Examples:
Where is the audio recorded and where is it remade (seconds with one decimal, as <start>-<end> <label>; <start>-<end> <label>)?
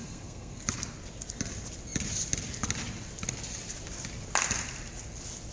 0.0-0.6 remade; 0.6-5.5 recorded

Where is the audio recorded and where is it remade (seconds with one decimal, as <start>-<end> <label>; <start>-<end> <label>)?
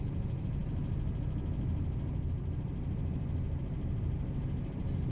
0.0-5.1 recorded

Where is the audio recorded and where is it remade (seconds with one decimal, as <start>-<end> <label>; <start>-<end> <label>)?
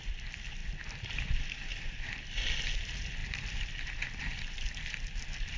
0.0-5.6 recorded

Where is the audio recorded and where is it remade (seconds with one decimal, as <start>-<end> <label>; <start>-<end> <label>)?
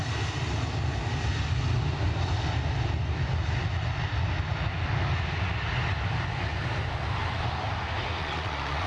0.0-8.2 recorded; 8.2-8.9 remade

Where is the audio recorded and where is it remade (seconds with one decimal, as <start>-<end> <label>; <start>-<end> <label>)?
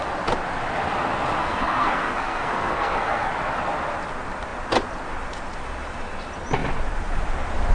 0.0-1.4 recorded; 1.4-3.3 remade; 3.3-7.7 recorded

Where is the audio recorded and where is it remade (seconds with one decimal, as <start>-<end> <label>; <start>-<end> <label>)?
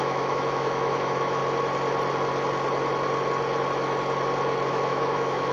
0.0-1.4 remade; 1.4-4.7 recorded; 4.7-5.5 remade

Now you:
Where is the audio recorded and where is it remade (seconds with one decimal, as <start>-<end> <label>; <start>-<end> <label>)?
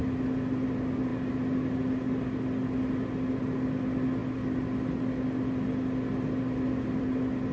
0.0-1.1 recorded; 1.1-3.4 remade; 3.4-4.2 recorded; 4.2-7.0 remade; 7.0-7.5 recorded